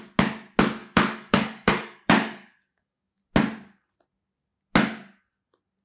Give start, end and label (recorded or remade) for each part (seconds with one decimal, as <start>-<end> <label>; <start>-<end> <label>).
0.0-0.8 recorded; 0.8-3.2 remade; 3.2-5.8 recorded